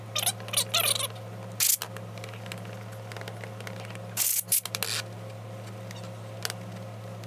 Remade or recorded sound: recorded